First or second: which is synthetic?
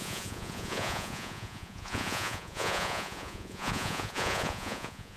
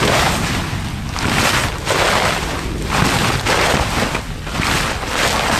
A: first